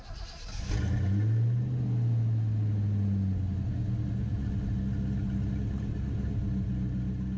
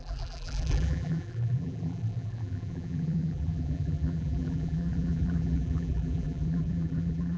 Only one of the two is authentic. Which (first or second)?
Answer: first